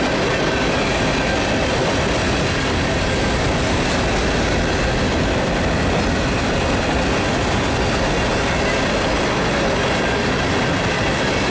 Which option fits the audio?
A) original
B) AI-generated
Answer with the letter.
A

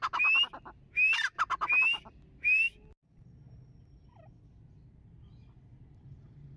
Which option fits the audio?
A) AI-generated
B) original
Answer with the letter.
B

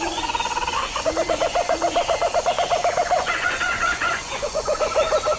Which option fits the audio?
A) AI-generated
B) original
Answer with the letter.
A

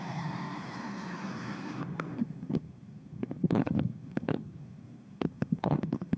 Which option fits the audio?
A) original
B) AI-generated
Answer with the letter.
B